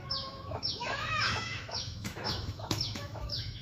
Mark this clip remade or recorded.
remade